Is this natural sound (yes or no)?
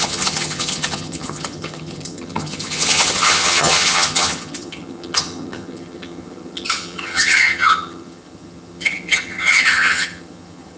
no